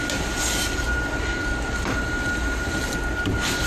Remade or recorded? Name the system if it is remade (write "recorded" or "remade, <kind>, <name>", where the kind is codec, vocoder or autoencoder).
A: recorded